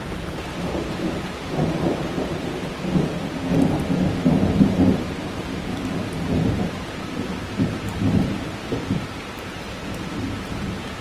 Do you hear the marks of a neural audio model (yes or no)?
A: yes